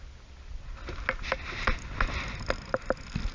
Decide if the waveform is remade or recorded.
recorded